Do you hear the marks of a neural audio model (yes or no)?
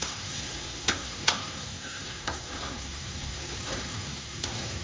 yes